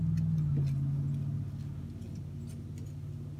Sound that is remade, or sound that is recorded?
recorded